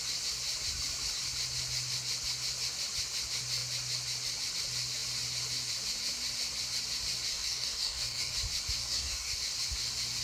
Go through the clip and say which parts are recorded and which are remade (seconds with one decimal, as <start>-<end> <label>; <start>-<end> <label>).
0.0-7.3 recorded; 7.3-8.3 remade; 8.3-8.8 recorded; 8.8-9.4 remade; 9.4-10.2 recorded